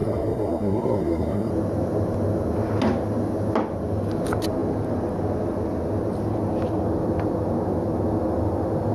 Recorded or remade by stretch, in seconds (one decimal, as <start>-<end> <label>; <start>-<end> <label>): 0.0-1.5 remade; 1.5-8.9 recorded